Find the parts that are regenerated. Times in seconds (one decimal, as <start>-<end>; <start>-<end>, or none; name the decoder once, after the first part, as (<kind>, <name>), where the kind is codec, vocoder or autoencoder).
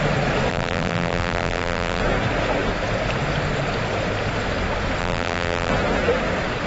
0.5-2.0 (vocoder, BigVGAN v2); 5.0-5.7